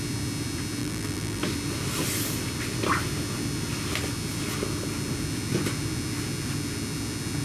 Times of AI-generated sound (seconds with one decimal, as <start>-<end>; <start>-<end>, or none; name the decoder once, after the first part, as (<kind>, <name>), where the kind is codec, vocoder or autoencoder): 0.8-1.4 (vocoder, BigVGAN v2)